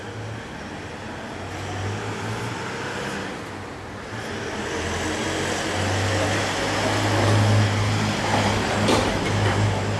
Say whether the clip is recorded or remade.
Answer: recorded